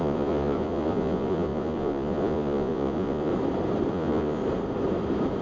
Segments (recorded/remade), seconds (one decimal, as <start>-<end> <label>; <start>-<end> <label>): 0.0-3.3 remade; 3.3-3.9 recorded; 3.9-4.4 remade; 4.4-5.4 recorded